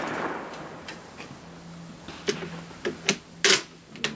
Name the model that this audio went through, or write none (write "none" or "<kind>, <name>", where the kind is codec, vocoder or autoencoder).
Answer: none